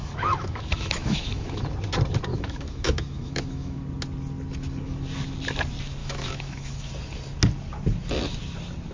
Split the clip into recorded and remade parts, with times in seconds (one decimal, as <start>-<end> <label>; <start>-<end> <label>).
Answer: 0.0-1.6 remade; 1.6-2.3 recorded; 2.3-3.8 remade; 3.8-6.0 recorded; 6.0-6.9 remade; 6.9-8.9 recorded